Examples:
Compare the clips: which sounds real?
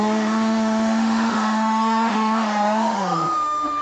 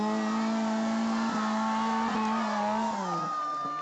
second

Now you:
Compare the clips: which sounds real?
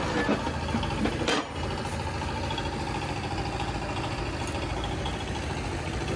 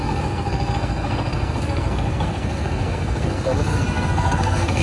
first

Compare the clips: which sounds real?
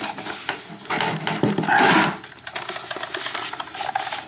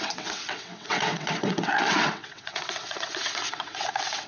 first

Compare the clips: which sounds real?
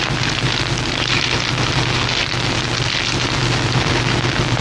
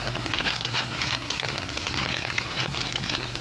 first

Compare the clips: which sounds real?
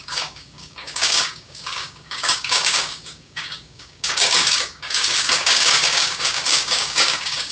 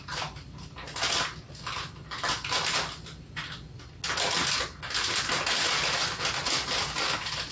second